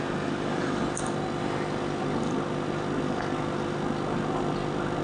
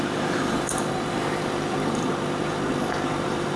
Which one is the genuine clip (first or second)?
first